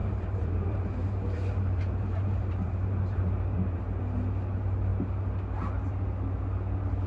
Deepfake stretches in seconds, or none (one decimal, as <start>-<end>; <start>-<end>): 0.0-4.0